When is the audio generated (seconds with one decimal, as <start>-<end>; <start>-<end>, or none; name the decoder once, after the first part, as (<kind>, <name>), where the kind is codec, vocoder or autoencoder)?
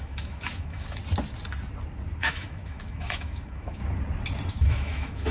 0.0-1.0 (autoencoder, DAC-VAE); 2.2-3.8; 4.5-5.3